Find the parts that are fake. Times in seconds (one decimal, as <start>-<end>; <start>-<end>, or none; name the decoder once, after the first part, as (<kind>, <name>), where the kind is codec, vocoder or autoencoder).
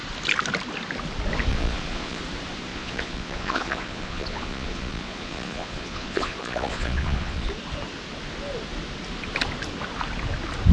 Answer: 1.5-2.2 (vocoder, Vocos); 2.7-7.5